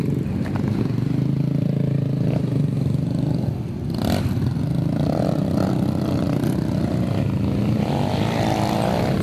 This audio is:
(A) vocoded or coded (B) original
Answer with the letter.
B